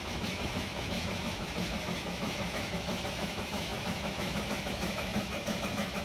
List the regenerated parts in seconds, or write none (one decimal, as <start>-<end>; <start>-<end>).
0.0-6.0